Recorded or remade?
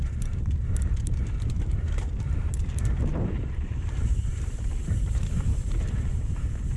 remade